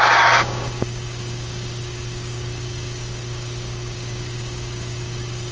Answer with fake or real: fake